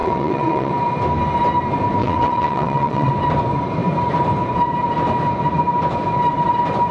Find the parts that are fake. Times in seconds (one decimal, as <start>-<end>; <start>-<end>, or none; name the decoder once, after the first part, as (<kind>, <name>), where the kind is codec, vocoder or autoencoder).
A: 0.0-0.7 (vocoder, WaveNeXt); 2.0-3.1

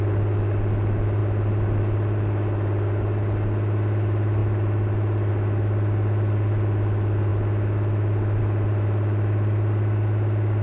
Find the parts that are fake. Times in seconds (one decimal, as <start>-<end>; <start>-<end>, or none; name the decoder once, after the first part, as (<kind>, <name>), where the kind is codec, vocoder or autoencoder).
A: none

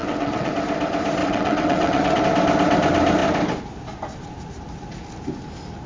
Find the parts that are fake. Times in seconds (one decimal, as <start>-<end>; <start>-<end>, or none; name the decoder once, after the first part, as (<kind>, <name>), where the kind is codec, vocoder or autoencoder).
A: 0.0-0.5 (vocoder, WaveNeXt); 1.2-2.2

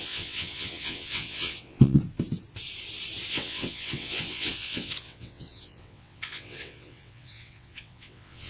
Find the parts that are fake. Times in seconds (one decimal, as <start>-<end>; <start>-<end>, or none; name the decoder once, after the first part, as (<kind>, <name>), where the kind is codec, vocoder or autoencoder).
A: 0.0-2.0 (vocoder, WaveNeXt); 3.3-8.5

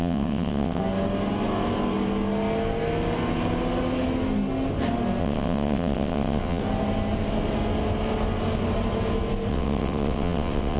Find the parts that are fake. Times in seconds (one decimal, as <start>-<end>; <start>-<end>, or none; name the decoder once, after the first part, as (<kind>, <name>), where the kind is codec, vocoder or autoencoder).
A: 0.0-0.8 (vocoder, WaveNeXt); 5.2-6.6; 9.5-10.8

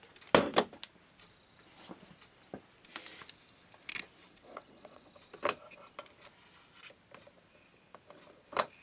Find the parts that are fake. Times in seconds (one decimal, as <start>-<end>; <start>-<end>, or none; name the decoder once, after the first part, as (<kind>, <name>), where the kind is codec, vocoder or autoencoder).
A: 4.2-5.1 (vocoder, WaveNeXt)

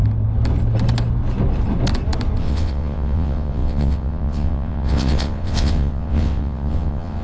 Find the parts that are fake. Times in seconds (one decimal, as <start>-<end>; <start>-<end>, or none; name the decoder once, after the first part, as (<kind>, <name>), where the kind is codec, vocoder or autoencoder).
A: 2.4-7.2 (vocoder, WaveNeXt)